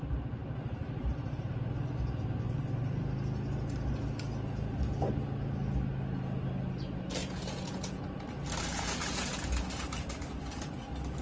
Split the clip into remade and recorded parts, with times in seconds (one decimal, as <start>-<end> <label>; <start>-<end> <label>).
0.0-7.2 recorded; 7.2-8.0 remade; 8.0-8.7 recorded; 8.7-9.6 remade; 9.6-11.2 recorded